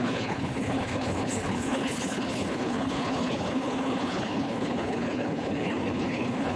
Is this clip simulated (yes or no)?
yes